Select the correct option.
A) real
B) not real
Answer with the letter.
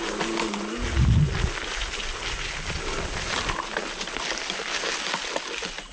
A